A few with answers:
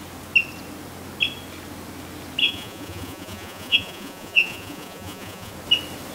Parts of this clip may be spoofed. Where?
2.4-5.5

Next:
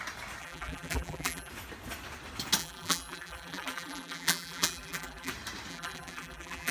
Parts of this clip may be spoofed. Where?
0.4-1.5; 2.6-5.3; 5.7-6.7